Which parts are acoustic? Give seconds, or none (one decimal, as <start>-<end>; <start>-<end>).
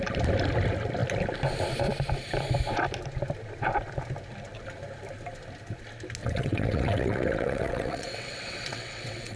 0.0-6.2